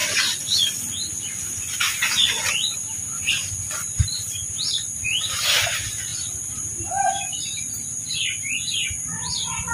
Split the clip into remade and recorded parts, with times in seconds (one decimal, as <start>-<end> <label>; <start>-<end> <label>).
0.0-6.1 recorded; 6.1-7.1 remade; 7.1-9.7 recorded